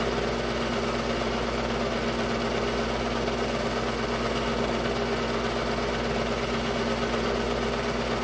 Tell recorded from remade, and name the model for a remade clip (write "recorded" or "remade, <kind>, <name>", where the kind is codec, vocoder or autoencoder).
recorded